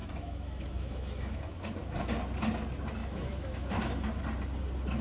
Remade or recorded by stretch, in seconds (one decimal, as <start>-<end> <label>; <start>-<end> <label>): 0.0-1.6 remade; 1.6-3.0 recorded; 3.0-4.2 remade; 4.2-5.0 recorded